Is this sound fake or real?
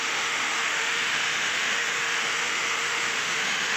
fake